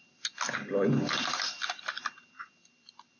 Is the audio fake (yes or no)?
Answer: no